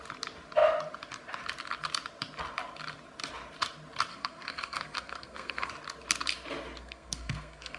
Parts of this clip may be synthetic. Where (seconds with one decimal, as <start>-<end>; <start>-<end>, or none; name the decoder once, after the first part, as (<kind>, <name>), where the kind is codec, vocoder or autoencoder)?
4.1-5.7 (codec, SNAC); 6.8-7.8